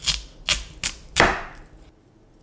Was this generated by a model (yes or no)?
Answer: no